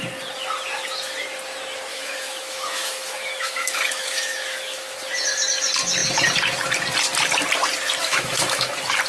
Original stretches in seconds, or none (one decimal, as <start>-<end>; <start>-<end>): 0.0-1.9; 5.0-8.0; 8.7-9.1